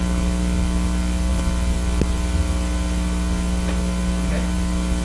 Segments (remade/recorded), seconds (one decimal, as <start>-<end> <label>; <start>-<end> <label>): 0.0-5.0 recorded